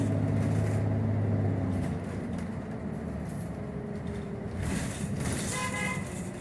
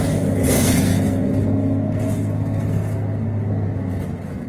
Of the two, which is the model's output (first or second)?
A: second